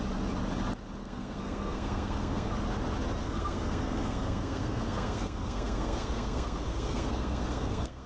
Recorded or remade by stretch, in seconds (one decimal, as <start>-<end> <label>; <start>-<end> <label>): 0.0-1.0 recorded; 1.0-2.5 remade; 2.5-3.2 recorded; 3.2-8.1 remade